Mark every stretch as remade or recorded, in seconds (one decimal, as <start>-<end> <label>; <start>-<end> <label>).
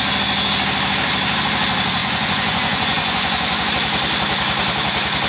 0.0-2.0 recorded; 2.0-3.7 remade; 3.7-5.3 recorded